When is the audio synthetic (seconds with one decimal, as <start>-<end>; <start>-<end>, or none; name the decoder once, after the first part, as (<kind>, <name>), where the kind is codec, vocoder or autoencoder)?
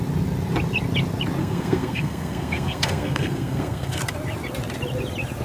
1.4-4.0 (codec, SNAC)